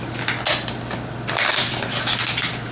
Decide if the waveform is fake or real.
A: real